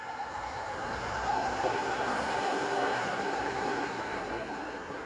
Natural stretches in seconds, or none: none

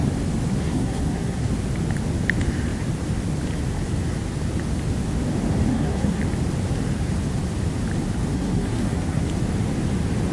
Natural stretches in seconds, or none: 0.0-0.6; 1.5-5.7; 6.2-8.3; 9.3-10.3

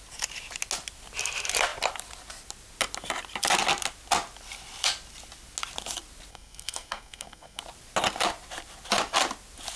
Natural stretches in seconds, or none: 0.0-6.3; 7.6-9.8